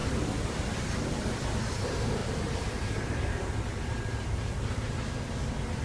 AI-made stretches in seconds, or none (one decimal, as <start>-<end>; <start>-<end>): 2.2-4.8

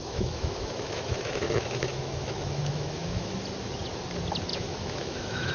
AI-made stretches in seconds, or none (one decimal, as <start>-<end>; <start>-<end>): 0.0-3.3; 4.5-5.5

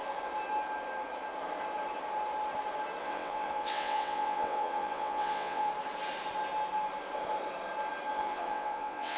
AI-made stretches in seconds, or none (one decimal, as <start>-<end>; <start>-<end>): 3.0-5.7; 8.1-9.2